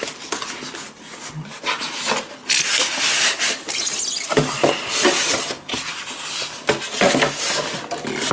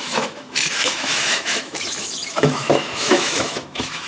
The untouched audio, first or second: first